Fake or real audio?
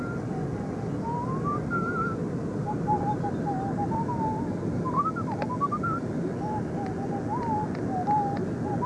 real